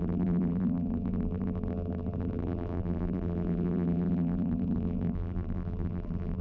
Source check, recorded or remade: remade